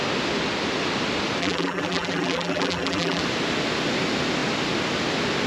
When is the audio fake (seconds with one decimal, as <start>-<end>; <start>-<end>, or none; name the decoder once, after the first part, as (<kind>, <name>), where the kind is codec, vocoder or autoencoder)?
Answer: 1.4-3.2 (vocoder, BigVGAN v2)